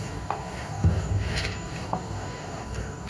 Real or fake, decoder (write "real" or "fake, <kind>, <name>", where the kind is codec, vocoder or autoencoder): fake, codec, DAC